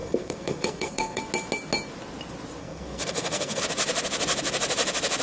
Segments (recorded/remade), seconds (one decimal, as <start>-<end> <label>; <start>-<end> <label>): 0.0-1.2 remade; 1.2-2.6 recorded; 2.6-3.6 remade; 3.6-5.2 recorded

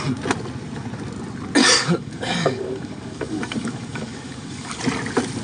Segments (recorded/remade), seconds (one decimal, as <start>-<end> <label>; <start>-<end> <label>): 0.0-1.6 recorded; 1.6-4.8 remade; 4.8-5.4 recorded